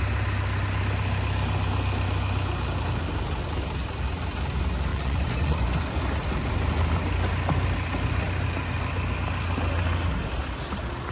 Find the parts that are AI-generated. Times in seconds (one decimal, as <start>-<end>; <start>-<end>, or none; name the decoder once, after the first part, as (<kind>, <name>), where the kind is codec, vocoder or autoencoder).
4.9-6.0 (vocoder, Vocos)